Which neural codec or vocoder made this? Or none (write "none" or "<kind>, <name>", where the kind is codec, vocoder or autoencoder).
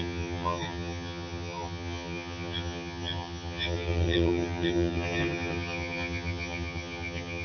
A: vocoder, HiFi-GAN